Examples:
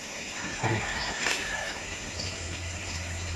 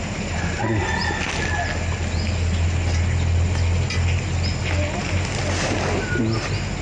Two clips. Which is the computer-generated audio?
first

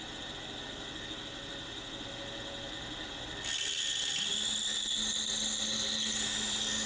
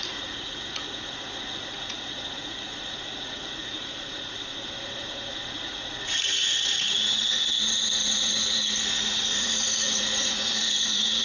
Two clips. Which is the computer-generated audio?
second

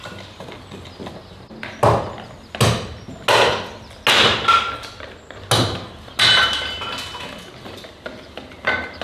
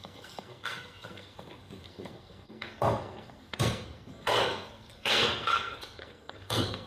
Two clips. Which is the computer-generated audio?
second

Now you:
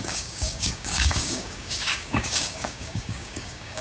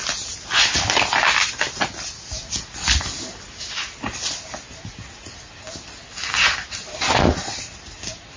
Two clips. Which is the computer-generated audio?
first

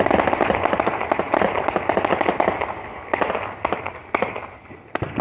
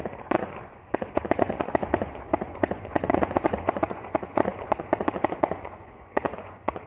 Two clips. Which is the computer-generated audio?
second